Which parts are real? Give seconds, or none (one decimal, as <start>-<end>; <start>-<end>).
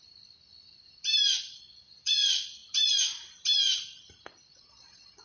0.0-1.6; 2.6-4.5